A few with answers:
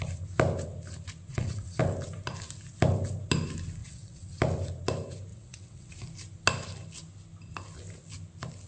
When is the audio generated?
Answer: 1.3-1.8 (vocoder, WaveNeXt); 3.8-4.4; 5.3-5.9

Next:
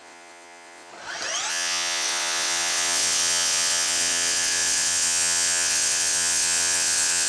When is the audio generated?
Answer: 0.0-0.9 (vocoder, WaveNeXt); 1.5-7.3

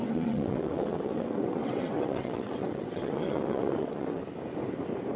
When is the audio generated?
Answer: 0.0-4.2 (vocoder, WaveNeXt)

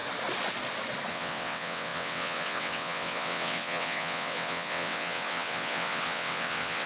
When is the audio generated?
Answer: 1.1-6.9 (vocoder, WaveNeXt)

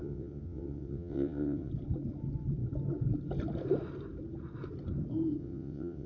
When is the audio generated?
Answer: 0.0-1.7 (vocoder, WaveNeXt); 5.4-6.1

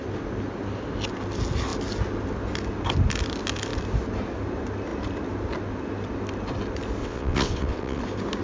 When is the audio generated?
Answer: 7.0-8.0 (vocoder, WaveNeXt)